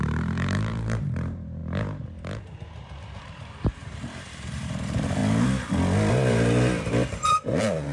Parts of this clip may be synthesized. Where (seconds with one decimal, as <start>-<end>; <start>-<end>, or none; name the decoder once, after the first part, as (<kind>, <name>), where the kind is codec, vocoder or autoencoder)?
0.0-1.6 (vocoder, BigVGAN v2); 3.2-5.2; 6.1-7.9